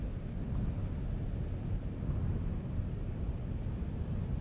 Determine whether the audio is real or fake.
real